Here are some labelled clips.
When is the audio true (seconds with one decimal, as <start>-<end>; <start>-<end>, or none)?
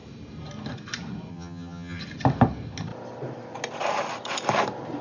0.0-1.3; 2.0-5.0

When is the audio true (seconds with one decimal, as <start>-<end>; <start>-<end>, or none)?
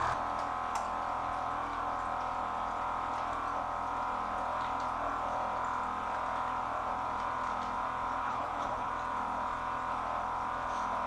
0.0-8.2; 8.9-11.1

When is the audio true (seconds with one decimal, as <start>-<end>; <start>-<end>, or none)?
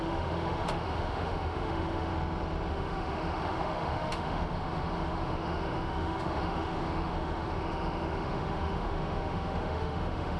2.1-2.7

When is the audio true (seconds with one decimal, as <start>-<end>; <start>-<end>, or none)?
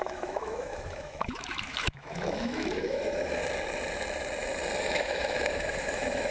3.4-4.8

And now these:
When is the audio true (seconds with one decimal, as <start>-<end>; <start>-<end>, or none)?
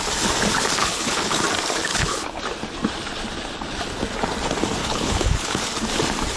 0.0-0.8; 1.4-1.9; 2.4-4.8; 5.6-6.4